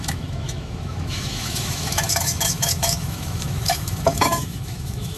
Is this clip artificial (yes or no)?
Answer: yes